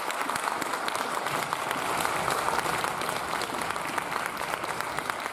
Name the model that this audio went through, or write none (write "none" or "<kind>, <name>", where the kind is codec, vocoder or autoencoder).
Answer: none